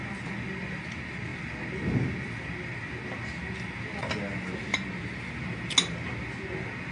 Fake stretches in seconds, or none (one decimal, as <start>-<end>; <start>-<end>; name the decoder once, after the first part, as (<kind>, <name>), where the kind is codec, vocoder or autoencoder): none